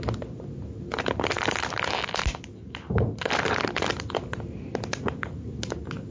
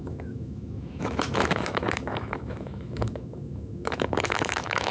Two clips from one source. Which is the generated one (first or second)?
second